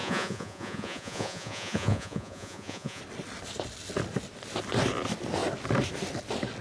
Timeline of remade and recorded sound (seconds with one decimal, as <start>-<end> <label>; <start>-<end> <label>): 0.0-3.0 remade; 3.0-6.6 recorded